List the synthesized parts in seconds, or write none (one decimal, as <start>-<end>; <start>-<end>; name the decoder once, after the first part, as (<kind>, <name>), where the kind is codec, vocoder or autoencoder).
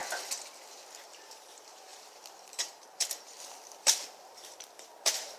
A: 1.0-5.4 (vocoder, BigVGAN v2)